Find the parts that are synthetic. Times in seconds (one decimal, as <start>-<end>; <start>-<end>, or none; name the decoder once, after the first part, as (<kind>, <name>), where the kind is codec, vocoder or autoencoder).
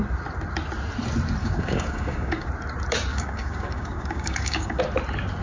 1.4-2.5 (codec, DAC); 3.1-4.8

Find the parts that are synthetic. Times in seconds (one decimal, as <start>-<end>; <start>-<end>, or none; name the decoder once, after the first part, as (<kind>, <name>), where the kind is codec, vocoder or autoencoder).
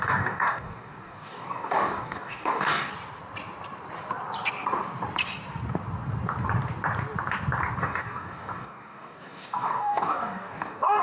0.0-2.9 (codec, DAC); 7.8-11.0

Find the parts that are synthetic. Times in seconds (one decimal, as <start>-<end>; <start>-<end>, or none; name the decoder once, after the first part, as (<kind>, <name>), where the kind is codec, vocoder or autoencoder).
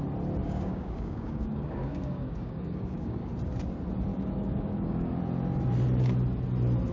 0.4-3.3 (codec, DAC); 4.1-5.2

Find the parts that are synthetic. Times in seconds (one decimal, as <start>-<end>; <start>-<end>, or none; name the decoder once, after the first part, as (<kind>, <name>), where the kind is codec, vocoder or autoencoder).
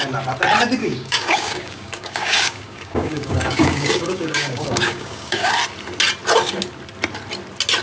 0.8-5.5 (codec, DAC)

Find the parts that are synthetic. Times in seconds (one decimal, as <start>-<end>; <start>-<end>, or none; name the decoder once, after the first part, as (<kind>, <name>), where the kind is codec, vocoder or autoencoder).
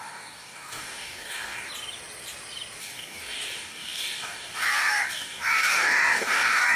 0.0-1.7 (codec, DAC); 2.8-6.8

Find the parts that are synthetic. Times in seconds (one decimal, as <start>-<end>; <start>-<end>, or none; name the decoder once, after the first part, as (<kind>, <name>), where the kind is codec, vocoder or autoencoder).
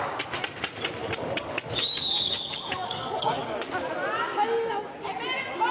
1.0-3.7 (codec, DAC)